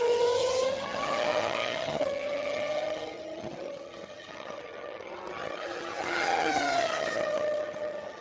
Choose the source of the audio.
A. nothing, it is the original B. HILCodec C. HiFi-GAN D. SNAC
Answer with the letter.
C